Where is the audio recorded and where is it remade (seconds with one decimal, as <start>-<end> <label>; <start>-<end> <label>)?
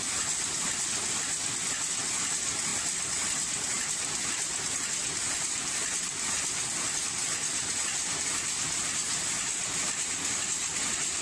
0.0-11.2 recorded